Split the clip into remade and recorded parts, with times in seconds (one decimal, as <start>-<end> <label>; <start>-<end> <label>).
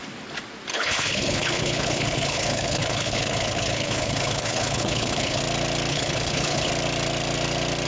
0.0-0.7 recorded; 0.7-5.4 remade; 5.4-5.9 recorded; 5.9-6.7 remade; 6.7-7.9 recorded